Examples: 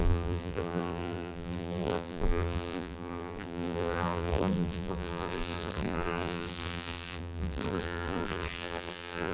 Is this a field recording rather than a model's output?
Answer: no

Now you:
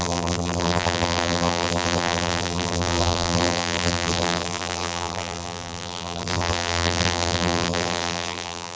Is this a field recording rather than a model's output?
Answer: no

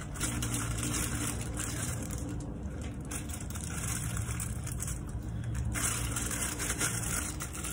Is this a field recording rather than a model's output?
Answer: no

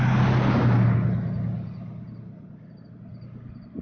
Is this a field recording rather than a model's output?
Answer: yes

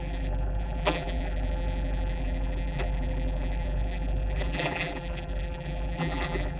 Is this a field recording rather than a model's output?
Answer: no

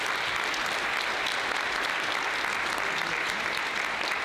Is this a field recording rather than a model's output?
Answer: yes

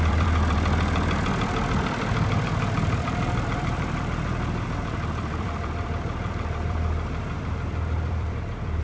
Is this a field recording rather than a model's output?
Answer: no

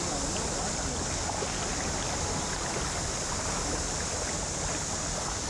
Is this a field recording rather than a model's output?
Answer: yes